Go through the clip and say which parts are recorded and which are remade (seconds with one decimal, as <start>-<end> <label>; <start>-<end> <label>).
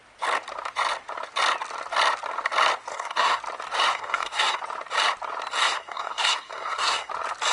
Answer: 0.0-2.9 recorded; 2.9-3.4 remade; 3.4-3.9 recorded; 3.9-4.6 remade; 4.6-5.6 recorded; 5.6-7.1 remade; 7.1-7.5 recorded